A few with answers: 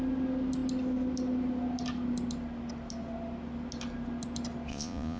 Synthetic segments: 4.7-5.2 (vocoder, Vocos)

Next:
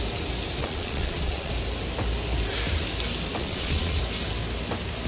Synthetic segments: 0.6-1.5 (vocoder, Vocos); 3.4-4.0

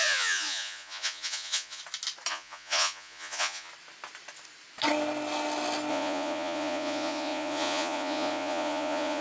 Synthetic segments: 0.0-1.8 (vocoder, Vocos); 2.3-3.7; 5.9-9.2

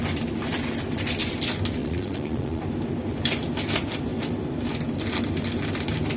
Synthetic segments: 1.8-2.6 (vocoder, Vocos)

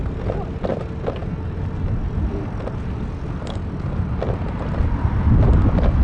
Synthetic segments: none